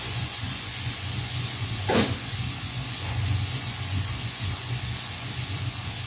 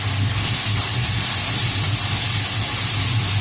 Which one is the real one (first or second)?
second